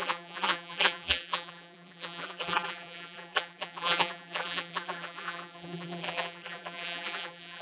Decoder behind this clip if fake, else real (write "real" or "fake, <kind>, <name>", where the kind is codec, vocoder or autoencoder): fake, vocoder, BigVGAN v2